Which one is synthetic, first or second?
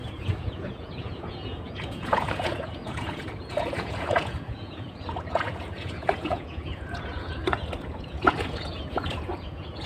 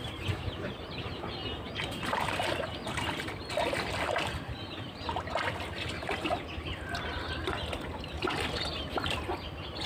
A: first